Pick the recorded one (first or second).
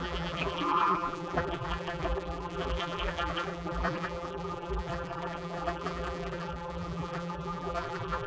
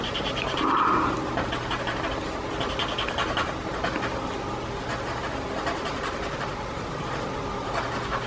second